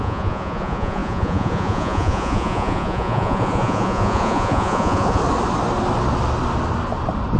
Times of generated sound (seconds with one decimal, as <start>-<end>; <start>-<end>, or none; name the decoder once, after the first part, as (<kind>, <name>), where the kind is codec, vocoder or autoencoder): 0.0-5.2 (vocoder, Vocos)